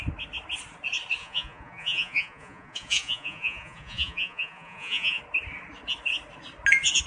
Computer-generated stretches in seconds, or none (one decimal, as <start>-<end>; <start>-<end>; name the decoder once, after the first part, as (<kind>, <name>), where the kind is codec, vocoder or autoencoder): 1.2-5.2 (vocoder, Vocos)